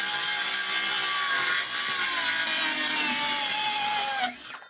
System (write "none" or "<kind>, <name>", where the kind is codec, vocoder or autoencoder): none